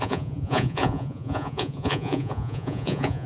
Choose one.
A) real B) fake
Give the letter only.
B